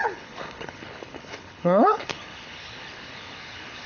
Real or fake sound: fake